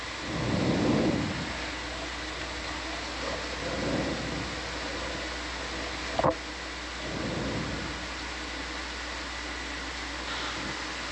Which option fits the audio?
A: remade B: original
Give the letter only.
B